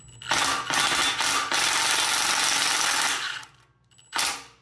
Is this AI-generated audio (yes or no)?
no